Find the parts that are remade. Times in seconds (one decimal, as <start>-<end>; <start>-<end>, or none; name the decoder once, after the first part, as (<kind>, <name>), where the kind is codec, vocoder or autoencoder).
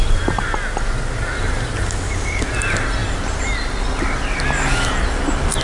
none